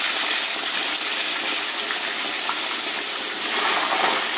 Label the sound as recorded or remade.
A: recorded